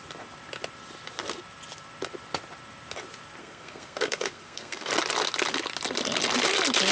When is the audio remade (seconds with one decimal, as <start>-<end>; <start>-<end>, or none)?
3.4-4.9